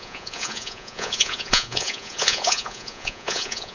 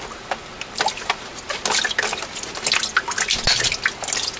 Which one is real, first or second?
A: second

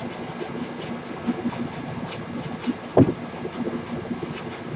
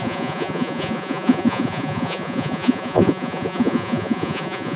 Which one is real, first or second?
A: first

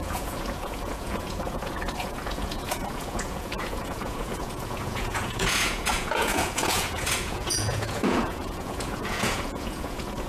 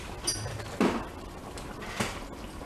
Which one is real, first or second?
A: second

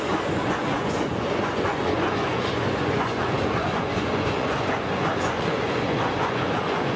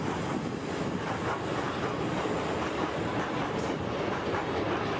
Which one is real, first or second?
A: second